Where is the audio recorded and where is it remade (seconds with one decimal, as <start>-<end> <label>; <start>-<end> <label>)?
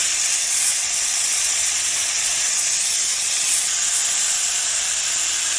0.0-2.6 remade; 2.6-3.1 recorded; 3.1-4.0 remade; 4.0-5.6 recorded